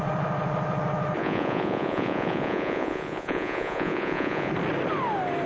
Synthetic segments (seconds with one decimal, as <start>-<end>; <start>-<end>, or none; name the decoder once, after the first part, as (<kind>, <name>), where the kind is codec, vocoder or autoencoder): 1.2-4.5 (vocoder, Vocos)